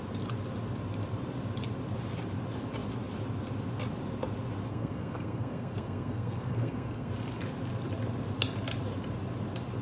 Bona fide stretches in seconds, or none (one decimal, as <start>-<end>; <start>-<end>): 0.0-4.7; 7.1-9.8